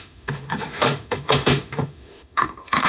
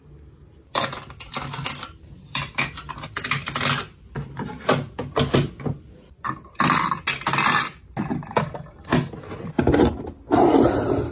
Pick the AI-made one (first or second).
first